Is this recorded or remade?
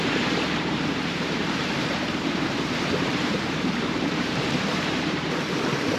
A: remade